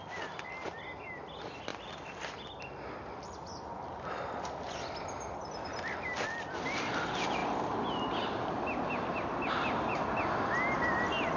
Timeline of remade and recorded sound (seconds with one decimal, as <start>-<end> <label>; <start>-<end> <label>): 0.0-11.4 recorded